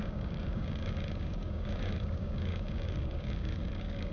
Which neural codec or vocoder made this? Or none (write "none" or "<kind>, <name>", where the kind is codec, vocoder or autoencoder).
codec, DAC